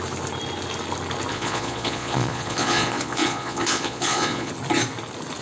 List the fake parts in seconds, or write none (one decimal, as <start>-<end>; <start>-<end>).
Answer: 1.3-4.5